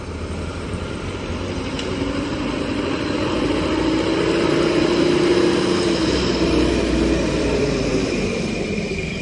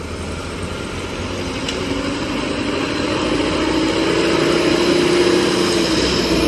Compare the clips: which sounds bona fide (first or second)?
second